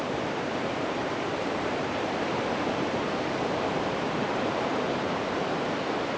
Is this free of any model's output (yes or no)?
no